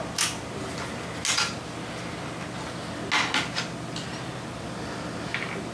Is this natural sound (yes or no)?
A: yes